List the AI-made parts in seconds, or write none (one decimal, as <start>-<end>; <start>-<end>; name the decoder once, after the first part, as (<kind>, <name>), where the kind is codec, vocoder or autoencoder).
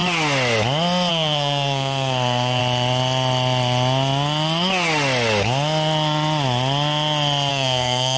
1.1-2.6 (codec, SNAC); 7.5-8.2